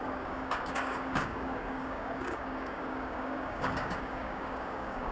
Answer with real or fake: fake